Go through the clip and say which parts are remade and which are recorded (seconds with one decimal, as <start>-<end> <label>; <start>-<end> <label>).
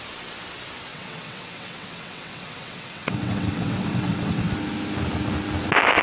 0.0-0.9 recorded; 0.9-4.5 remade; 4.5-6.0 recorded